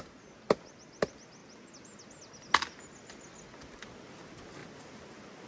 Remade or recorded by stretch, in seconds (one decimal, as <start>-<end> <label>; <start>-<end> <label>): 0.0-5.5 recorded